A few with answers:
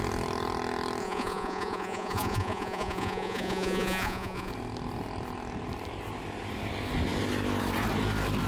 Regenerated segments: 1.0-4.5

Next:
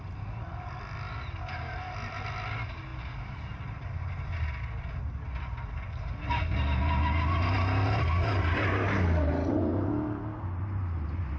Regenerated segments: none